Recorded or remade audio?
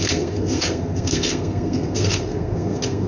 remade